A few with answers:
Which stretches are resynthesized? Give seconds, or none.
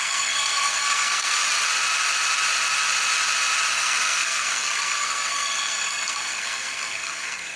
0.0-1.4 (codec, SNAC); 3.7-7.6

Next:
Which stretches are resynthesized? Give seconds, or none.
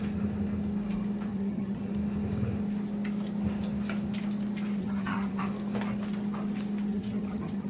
1.3-1.9 (vocoder, HiFi-GAN); 4.8-5.5; 6.9-7.7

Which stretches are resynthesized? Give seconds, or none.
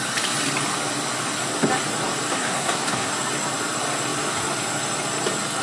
2.3-3.1 (codec, SNAC)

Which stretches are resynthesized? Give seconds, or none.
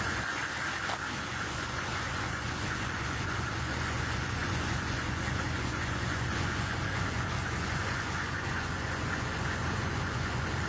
0.0-0.4 (vocoder, Vocos); 1.3-10.7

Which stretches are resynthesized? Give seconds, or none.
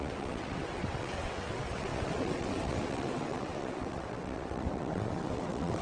0.0-5.8 (vocoder, WaveNeXt)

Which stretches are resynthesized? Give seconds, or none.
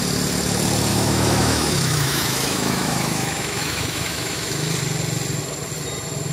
0.9-4.7 (autoencoder, DAC-VAE)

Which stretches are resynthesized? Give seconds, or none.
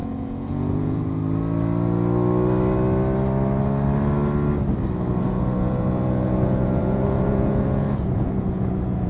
0.0-1.2 (vocoder, Vocos); 5.2-9.1